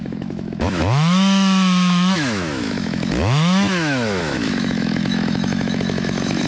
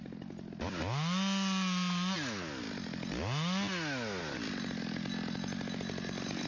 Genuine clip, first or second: second